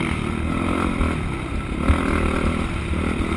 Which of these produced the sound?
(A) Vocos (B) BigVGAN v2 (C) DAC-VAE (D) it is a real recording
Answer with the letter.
D